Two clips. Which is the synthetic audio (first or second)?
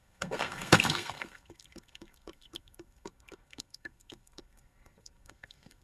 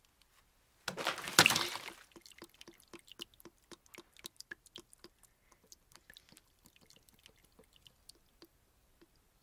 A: first